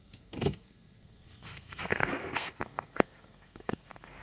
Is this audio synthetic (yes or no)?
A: yes